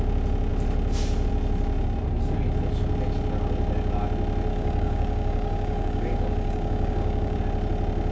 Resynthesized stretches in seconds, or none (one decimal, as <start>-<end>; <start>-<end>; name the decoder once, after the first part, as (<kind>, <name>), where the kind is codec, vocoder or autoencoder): 4.5-7.4 (codec, DAC)